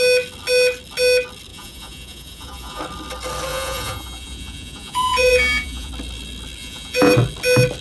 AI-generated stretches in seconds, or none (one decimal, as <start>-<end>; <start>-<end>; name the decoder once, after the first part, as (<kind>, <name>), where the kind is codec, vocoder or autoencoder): 1.5-2.8 (vocoder, Vocos); 3.5-5.9; 6.6-7.1